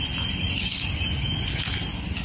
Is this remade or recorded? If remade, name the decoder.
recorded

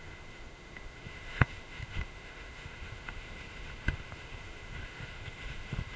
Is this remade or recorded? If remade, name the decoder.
remade, autoencoder, DAC-VAE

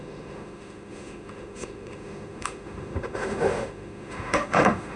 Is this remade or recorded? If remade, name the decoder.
remade, autoencoder, DAC-VAE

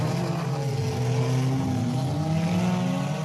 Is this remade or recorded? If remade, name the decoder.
recorded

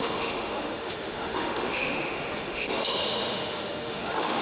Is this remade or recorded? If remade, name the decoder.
remade, autoencoder, DAC-VAE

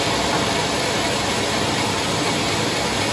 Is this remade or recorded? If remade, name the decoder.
recorded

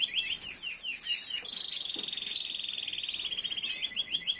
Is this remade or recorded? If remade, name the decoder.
recorded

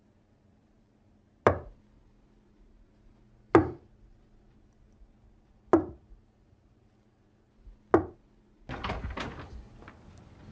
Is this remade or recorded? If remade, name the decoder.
recorded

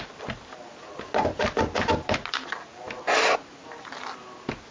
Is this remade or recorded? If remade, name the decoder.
recorded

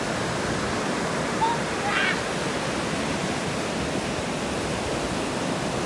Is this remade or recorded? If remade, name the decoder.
recorded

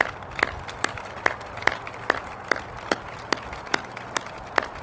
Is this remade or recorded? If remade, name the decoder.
recorded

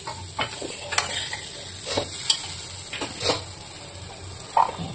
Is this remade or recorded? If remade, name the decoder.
recorded